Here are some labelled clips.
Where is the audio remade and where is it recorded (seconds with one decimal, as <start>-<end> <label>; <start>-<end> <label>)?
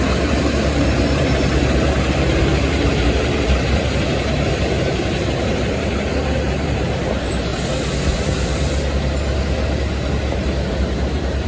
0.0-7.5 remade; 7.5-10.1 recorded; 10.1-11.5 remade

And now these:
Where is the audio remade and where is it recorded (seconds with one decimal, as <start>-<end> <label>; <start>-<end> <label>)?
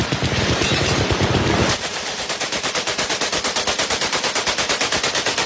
0.0-3.1 remade; 3.1-5.5 recorded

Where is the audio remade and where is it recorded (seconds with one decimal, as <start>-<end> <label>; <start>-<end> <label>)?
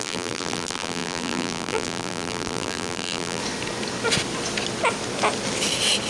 0.0-3.4 remade; 3.4-6.1 recorded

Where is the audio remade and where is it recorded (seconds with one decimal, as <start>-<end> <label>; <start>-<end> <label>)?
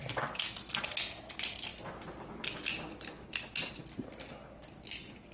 0.0-5.3 recorded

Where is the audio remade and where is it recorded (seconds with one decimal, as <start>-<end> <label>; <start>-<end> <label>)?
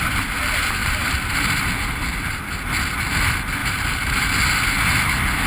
0.0-0.8 recorded; 0.8-2.4 remade; 2.4-3.6 recorded; 3.6-4.3 remade; 4.3-5.5 recorded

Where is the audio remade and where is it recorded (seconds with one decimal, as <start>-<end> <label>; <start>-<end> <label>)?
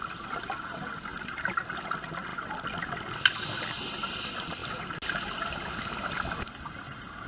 0.0-7.3 recorded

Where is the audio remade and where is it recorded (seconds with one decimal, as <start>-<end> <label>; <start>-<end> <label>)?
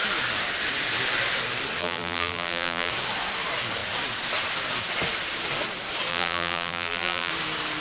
0.0-1.8 recorded; 1.8-2.9 remade; 2.9-6.1 recorded; 6.1-7.3 remade; 7.3-7.8 recorded